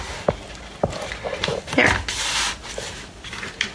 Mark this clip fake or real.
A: real